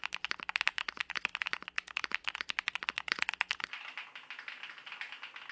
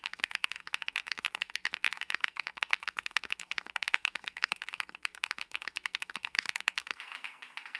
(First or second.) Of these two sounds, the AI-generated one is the second